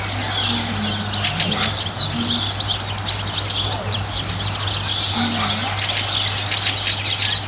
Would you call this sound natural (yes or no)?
yes